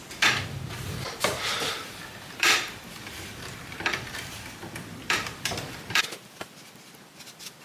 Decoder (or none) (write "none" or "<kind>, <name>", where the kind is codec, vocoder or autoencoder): vocoder, BigVGAN v2